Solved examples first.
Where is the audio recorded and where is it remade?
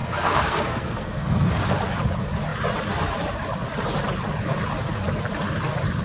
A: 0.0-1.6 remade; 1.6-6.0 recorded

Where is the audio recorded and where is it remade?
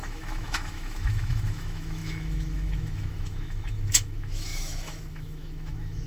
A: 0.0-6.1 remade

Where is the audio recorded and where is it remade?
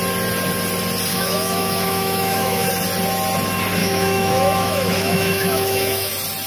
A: 0.0-1.1 recorded; 1.1-2.7 remade; 2.7-3.8 recorded; 3.8-6.1 remade; 6.1-6.5 recorded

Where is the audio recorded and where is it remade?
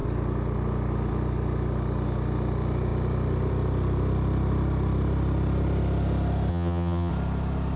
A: 0.0-6.5 recorded; 6.5-7.1 remade; 7.1-7.8 recorded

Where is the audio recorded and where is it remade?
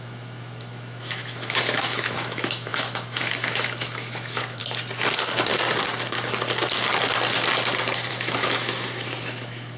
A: 0.0-4.6 remade; 4.6-8.1 recorded; 8.1-9.8 remade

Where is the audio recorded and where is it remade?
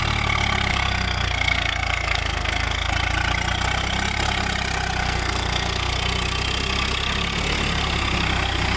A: 0.0-0.7 recorded; 0.7-2.9 remade; 2.9-5.0 recorded; 5.0-5.9 remade; 5.9-8.8 recorded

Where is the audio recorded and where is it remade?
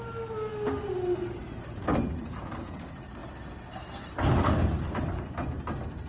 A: 0.0-6.1 recorded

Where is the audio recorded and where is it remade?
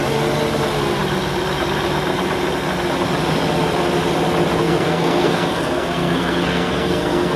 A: 0.0-4.6 recorded; 4.6-7.4 remade